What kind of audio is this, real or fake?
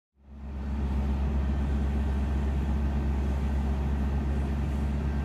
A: real